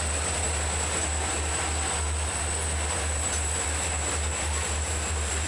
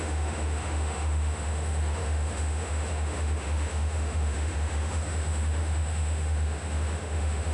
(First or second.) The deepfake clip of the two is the second